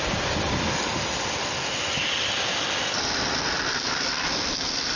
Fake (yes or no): no